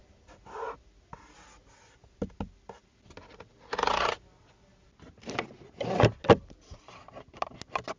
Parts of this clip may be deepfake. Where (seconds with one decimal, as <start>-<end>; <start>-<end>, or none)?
none